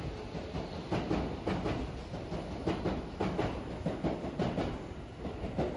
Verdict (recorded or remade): recorded